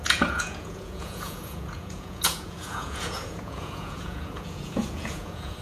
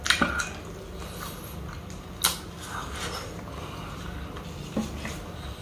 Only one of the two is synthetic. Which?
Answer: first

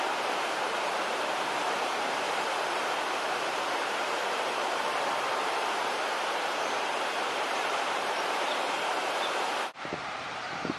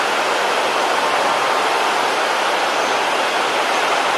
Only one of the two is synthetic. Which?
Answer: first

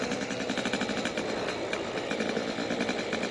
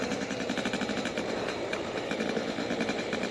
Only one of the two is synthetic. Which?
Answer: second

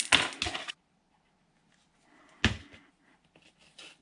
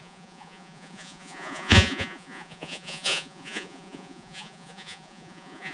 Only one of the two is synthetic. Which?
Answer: second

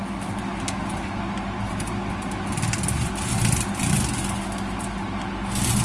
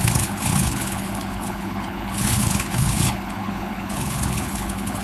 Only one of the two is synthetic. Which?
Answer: second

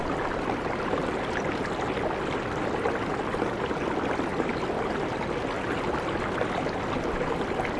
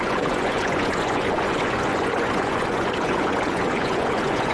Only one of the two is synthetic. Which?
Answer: second